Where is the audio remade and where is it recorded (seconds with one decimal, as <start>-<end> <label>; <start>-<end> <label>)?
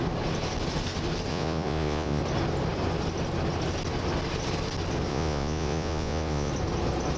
0.0-1.3 recorded; 1.3-2.2 remade; 2.2-5.1 recorded; 5.1-6.5 remade; 6.5-7.2 recorded